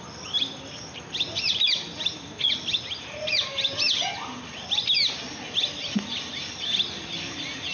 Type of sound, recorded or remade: recorded